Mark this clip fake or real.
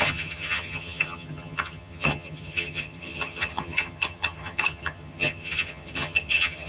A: fake